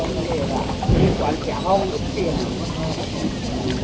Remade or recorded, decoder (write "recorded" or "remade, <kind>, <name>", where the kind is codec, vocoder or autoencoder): recorded